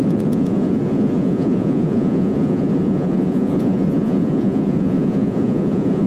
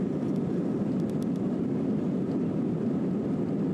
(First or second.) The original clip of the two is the second